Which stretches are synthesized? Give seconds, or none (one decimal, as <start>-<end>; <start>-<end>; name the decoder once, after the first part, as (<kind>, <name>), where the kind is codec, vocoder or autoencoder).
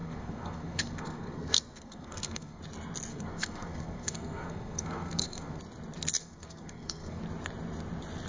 0.0-2.6 (codec, SNAC); 3.1-5.6; 6.2-7.2